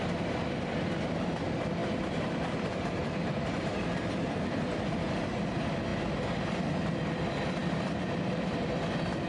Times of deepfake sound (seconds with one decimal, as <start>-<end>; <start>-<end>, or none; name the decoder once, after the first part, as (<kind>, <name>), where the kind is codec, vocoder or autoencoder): 0.0-9.3 (vocoder, BigVGAN v2)